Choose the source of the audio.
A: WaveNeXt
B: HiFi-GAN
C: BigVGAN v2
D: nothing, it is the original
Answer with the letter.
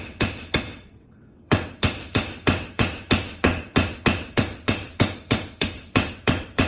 A